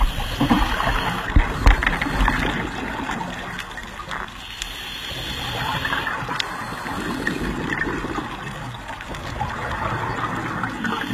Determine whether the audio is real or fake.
real